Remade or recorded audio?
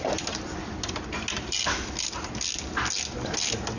recorded